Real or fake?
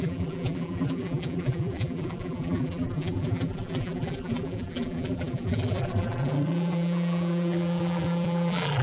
fake